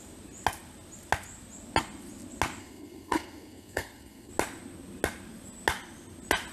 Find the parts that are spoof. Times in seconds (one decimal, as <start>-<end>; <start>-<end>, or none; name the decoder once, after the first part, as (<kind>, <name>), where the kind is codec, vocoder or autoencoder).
2.6-4.3 (codec, SNAC)